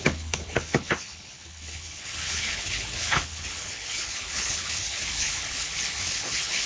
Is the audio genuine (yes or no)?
no